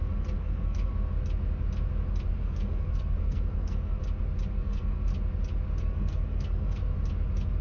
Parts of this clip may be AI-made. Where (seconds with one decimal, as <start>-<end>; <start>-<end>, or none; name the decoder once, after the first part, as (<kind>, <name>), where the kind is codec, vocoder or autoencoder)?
0.0-0.9 (codec, SNAC); 2.3-4.0; 4.5-5.1; 5.8-6.8